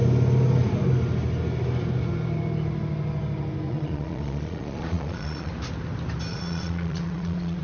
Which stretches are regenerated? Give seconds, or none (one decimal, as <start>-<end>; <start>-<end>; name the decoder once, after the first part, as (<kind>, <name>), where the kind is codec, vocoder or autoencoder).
3.7-5.5 (vocoder, Vocos); 6.3-7.6